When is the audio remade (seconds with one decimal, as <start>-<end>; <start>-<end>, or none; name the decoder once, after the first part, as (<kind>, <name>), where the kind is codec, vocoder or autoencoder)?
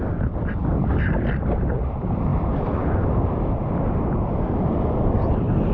none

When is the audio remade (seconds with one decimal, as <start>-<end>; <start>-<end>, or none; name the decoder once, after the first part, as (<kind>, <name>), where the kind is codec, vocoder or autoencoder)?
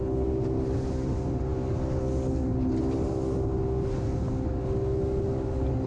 none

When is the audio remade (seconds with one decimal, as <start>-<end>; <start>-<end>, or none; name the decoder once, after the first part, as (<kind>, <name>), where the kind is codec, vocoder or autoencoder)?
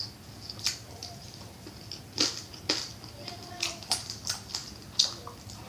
1.0-1.7 (vocoder, BigVGAN v2)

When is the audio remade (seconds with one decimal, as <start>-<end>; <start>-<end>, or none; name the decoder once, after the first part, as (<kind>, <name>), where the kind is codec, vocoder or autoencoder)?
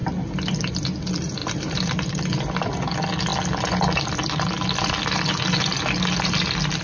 1.4-2.4 (vocoder, BigVGAN v2)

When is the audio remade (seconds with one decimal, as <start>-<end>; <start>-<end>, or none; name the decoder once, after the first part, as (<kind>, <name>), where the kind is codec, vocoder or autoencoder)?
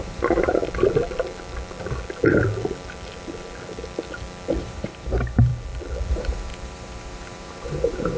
0.0-0.6 (vocoder, BigVGAN v2); 4.6-5.5; 6.1-8.2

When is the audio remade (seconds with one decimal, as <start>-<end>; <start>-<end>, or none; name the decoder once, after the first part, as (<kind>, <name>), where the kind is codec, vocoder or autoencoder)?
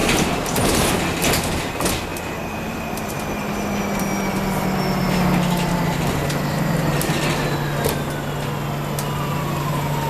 0.0-0.9 (vocoder, BigVGAN v2); 2.1-3.1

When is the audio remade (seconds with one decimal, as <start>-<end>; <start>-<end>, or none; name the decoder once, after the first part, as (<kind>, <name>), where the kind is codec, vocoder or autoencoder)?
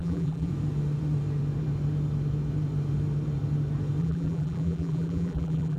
0.0-0.5 (vocoder, BigVGAN v2); 4.0-5.8